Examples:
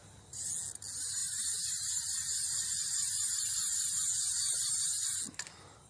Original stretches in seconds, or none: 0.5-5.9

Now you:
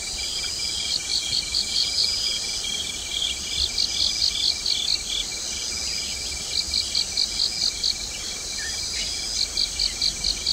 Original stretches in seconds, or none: 0.0-1.1; 2.4-10.5

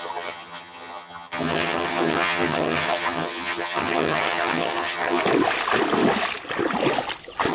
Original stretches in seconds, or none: 5.2-7.5

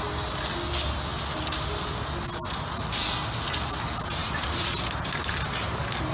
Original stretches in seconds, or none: 0.0-4.2; 4.7-6.1

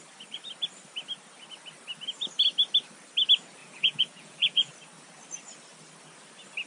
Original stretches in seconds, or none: 0.0-3.6; 4.7-6.7

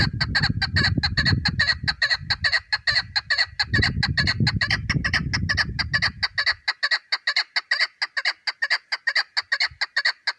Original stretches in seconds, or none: 0.0-10.4